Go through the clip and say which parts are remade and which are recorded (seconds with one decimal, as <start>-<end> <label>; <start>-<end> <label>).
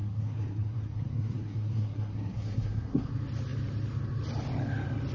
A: 0.0-3.1 remade; 3.1-5.1 recorded